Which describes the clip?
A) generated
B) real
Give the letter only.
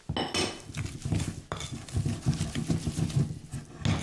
B